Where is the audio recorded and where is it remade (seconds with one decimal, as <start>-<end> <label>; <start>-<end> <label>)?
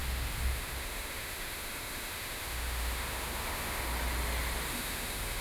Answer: 0.0-3.9 remade; 3.9-4.7 recorded; 4.7-5.4 remade